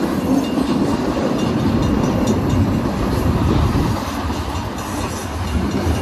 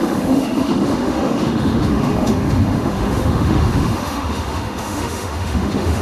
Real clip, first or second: first